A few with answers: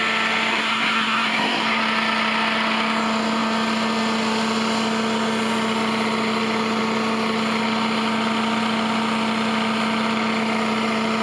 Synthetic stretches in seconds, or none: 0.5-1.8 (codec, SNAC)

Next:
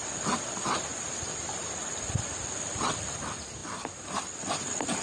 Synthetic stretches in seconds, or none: none

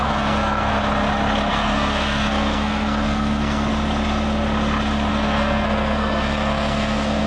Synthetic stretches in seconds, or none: 0.0-0.7 (codec, SNAC); 1.5-3.7; 5.1-7.3

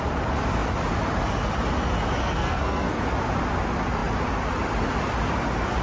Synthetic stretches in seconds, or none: 2.2-3.0 (codec, SNAC)

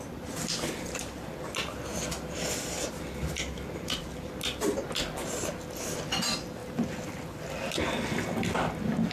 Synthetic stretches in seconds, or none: none